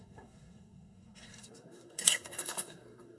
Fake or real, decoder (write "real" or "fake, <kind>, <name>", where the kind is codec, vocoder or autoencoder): fake, codec, SNAC